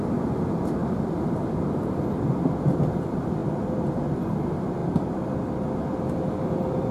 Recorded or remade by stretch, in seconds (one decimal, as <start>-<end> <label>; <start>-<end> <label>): 0.0-3.4 remade; 3.4-4.3 recorded; 4.3-4.8 remade; 4.8-5.8 recorded; 5.8-6.9 remade